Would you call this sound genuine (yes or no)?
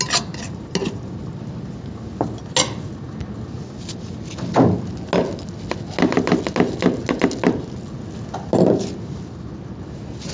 yes